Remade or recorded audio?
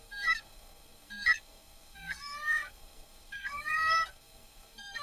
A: remade